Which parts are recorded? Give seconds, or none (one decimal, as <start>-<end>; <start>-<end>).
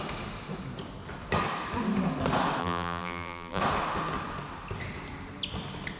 0.0-2.6; 3.6-6.0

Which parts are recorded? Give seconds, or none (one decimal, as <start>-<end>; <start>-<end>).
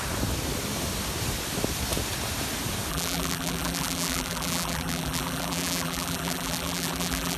0.0-2.9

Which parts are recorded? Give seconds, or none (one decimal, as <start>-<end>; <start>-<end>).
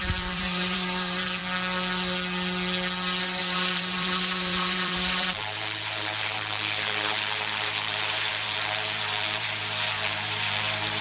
1.4-3.2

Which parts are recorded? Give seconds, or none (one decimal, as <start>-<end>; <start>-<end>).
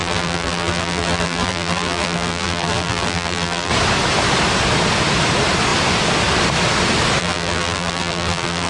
3.7-7.2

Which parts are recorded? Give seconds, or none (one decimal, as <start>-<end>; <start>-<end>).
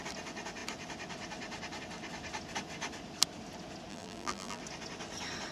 0.0-3.9; 4.6-5.5